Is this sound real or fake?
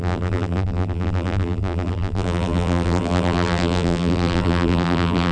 fake